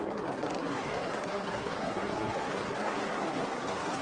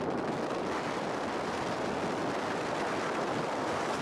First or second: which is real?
second